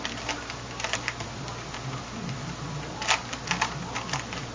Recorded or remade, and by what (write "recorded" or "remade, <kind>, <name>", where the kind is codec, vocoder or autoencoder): recorded